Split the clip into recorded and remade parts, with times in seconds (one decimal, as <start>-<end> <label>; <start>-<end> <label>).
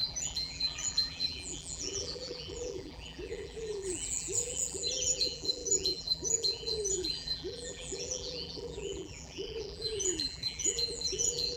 0.0-11.6 remade